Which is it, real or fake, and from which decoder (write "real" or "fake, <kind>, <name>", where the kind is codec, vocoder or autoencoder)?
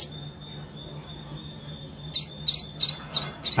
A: real